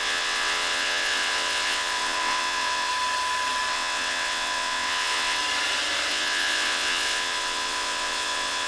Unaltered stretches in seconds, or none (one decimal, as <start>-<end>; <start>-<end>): 2.9-3.7; 5.4-6.1